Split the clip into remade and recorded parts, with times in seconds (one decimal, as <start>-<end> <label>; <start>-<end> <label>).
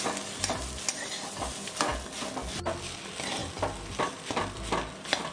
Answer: 0.0-5.3 recorded